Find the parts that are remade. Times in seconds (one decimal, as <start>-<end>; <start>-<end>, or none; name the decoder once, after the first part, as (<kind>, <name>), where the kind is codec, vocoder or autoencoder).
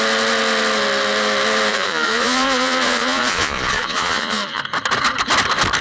1.7-4.6 (vocoder, Vocos)